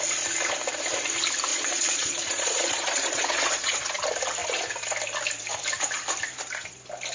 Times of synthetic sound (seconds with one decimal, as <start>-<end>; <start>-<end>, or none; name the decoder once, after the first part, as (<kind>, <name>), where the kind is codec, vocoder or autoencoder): 1.5-4.0 (vocoder, Vocos)